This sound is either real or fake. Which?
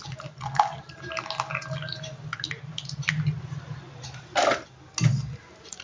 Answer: real